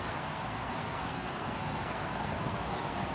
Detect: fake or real fake